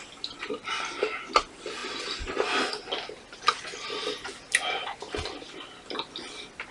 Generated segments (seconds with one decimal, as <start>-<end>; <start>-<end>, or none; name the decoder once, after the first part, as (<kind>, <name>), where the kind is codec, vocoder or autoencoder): none